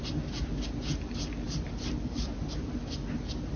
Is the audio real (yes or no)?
yes